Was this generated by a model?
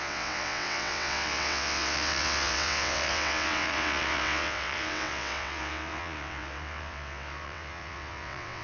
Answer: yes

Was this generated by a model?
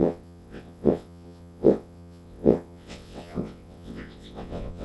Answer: yes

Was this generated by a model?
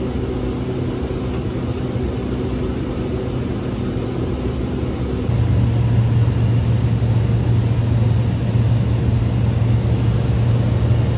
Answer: no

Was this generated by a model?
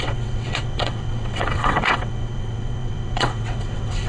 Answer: yes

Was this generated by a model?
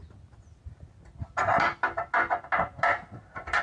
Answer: no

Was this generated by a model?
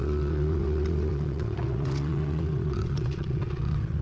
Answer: yes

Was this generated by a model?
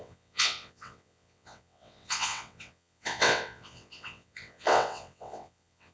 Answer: yes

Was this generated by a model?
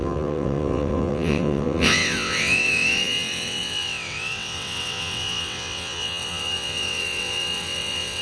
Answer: yes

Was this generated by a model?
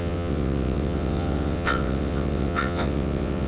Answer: yes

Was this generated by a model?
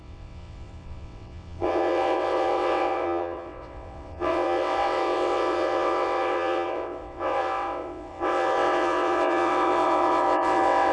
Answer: yes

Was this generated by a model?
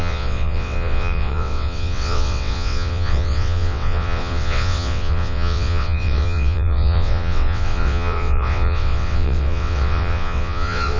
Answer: yes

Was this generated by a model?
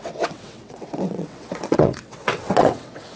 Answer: yes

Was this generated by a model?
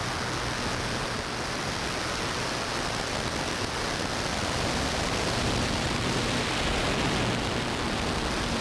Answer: no